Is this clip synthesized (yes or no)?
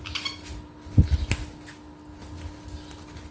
no